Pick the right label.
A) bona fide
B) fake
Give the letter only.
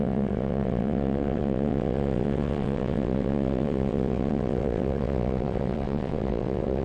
B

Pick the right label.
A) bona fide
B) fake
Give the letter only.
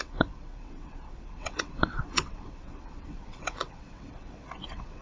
B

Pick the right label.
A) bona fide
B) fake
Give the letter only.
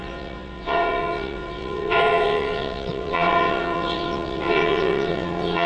B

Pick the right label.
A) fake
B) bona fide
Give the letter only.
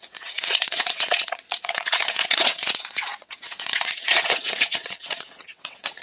A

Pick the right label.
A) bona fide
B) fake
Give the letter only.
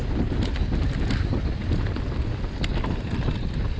A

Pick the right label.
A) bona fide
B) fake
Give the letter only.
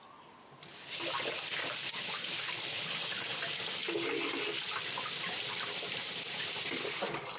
A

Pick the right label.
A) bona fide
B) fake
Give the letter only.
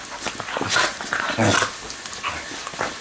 A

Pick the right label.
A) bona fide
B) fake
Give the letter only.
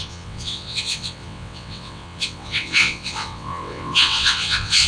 B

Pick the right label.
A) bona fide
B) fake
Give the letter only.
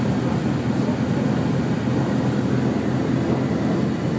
A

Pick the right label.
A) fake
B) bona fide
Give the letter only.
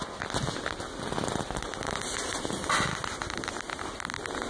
B